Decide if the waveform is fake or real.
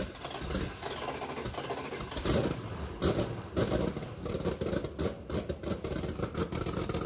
real